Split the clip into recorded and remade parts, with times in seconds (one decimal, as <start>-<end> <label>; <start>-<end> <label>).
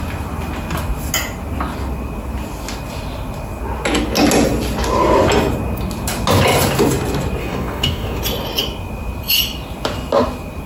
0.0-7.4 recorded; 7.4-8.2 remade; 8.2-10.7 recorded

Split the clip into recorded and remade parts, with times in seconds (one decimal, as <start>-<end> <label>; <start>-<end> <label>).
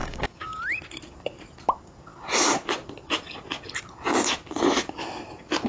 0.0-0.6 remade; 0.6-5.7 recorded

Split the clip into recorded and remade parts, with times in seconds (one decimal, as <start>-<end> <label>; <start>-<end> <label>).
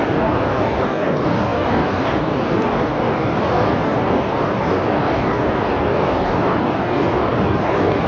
0.0-8.1 remade